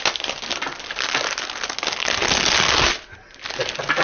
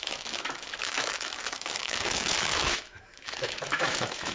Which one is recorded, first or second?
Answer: first